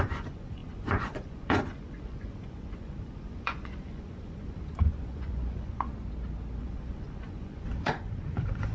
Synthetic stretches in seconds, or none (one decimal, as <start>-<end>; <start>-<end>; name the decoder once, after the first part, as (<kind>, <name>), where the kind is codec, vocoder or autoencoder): 0.0-5.9 (vocoder, Vocos); 6.6-8.7